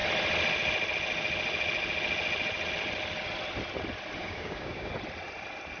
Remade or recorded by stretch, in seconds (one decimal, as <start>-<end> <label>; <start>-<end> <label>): 0.0-4.2 recorded; 4.2-4.9 remade; 4.9-5.8 recorded